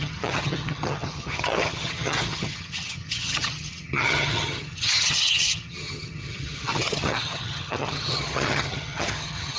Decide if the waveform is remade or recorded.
remade